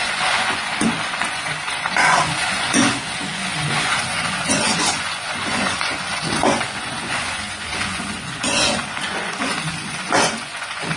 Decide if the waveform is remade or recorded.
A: remade